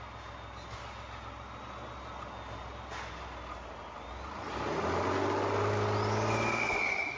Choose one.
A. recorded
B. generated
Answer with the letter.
A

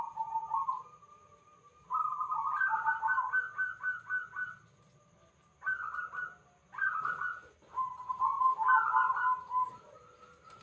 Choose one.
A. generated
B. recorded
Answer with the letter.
B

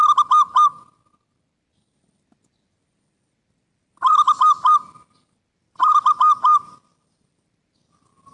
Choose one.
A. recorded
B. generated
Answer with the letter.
A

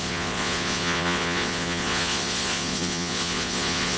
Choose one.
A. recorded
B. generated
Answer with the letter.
B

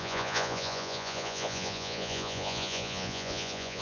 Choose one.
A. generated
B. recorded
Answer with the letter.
A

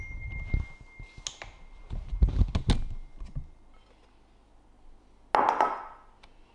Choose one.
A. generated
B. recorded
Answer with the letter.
B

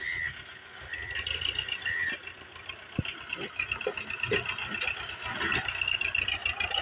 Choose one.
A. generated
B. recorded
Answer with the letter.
B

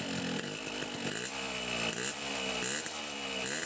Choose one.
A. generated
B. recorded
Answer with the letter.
B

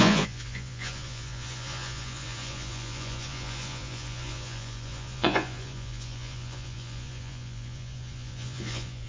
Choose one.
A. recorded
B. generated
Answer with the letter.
B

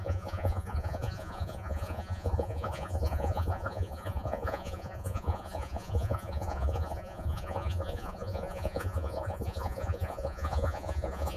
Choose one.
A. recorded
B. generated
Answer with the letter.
B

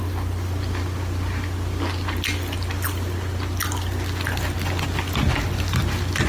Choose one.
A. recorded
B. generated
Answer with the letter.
A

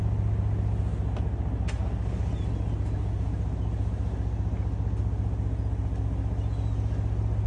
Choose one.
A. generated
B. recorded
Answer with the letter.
B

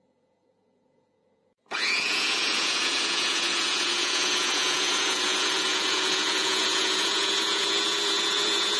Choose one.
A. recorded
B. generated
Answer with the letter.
B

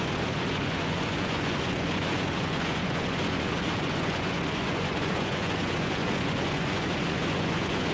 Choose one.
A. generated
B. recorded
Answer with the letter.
A